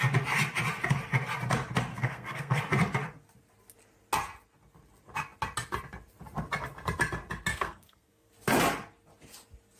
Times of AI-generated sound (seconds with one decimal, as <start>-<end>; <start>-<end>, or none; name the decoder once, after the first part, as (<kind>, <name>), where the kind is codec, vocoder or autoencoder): 1.9-2.6 (codec, SNAC); 7.5-8.3